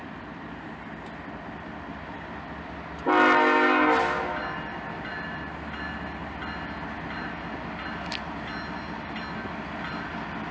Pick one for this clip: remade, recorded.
recorded